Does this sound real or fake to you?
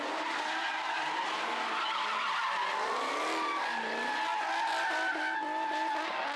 real